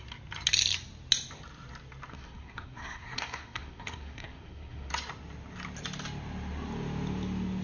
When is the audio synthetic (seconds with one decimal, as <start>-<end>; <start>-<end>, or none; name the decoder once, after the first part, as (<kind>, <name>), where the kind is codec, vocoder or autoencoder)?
2.1-4.9 (codec, SNAC)